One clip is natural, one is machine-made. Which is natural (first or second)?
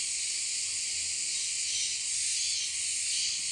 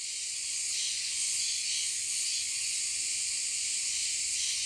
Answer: first